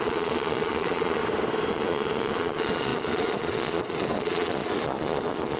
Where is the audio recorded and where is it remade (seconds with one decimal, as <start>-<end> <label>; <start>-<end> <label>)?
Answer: 0.0-1.2 remade; 1.2-1.7 recorded; 1.7-5.6 remade